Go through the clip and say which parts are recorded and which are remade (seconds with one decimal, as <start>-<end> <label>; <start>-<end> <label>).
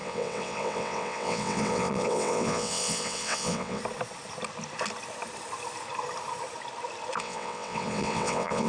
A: 0.0-3.8 remade; 3.8-7.2 recorded; 7.2-8.7 remade